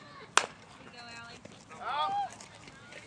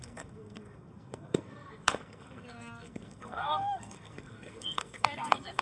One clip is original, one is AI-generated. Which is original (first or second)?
first